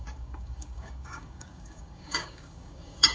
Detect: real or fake fake